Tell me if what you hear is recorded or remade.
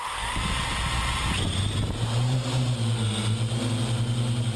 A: recorded